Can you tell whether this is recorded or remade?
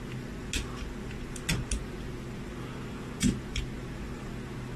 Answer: recorded